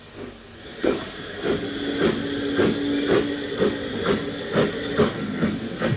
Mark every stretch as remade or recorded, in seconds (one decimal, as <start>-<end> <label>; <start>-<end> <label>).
0.0-1.4 remade; 1.4-5.0 recorded; 5.0-6.0 remade